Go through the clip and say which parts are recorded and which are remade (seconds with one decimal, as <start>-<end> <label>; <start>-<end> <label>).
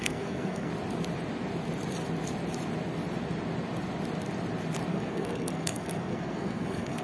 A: 0.0-0.7 remade; 0.7-4.9 recorded; 4.9-7.0 remade